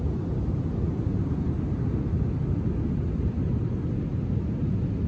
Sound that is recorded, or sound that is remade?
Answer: recorded